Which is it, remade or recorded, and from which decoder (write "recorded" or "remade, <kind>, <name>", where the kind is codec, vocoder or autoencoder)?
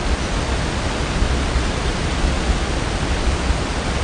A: recorded